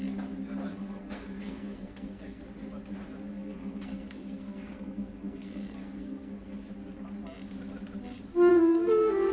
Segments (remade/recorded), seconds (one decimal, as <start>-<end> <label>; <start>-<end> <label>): 0.0-0.7 recorded; 0.7-2.4 remade; 2.4-3.3 recorded; 3.3-6.7 remade; 6.7-8.5 recorded; 8.5-9.3 remade